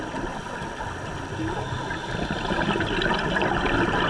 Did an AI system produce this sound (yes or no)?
no